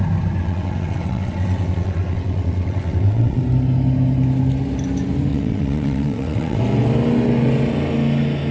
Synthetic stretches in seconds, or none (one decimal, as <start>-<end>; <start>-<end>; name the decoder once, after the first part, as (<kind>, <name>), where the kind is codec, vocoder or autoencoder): 0.4-3.4 (vocoder, WaveNeXt); 5.3-6.6